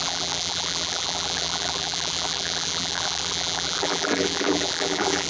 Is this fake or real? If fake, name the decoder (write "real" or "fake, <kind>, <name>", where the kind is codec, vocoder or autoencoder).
fake, vocoder, BigVGAN v2